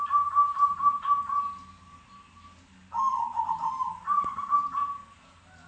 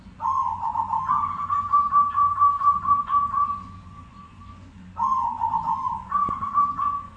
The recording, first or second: first